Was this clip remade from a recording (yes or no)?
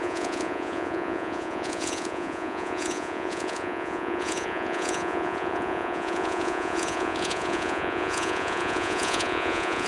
yes